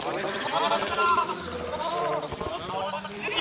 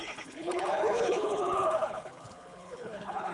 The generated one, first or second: second